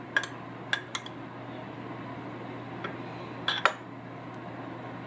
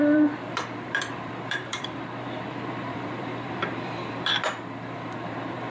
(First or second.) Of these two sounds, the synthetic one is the second